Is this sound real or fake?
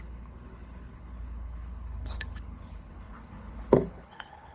fake